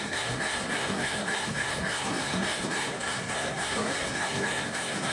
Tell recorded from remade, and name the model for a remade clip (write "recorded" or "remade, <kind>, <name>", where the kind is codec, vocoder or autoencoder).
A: remade, codec, SNAC